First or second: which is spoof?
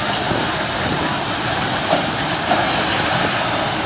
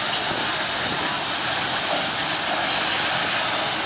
first